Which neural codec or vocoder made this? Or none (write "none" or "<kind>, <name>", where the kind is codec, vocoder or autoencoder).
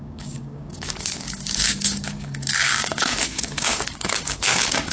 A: codec, DAC